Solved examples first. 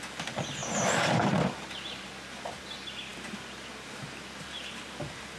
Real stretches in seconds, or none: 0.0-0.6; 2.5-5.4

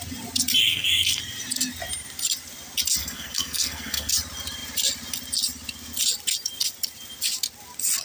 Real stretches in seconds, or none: 0.0-0.6; 1.2-3.0; 4.1-8.0

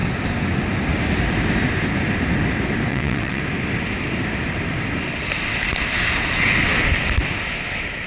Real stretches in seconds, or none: 0.0-2.9; 3.4-8.1

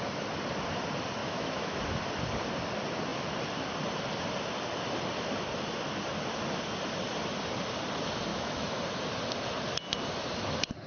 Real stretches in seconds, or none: 0.0-1.2; 1.8-8.3; 8.8-10.9

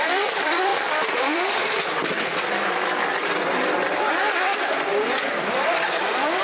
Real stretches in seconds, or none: 4.9-5.5

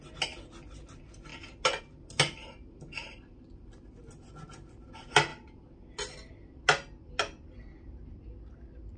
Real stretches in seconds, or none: 0.0-9.0

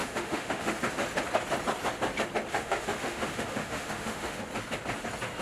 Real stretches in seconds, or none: 0.8-2.5; 4.4-5.4